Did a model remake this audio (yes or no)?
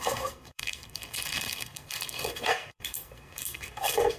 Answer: yes